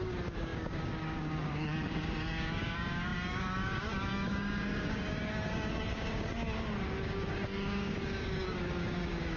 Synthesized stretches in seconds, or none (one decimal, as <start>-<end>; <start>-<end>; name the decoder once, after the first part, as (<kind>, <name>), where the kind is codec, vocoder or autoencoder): 0.0-9.4 (codec, DAC)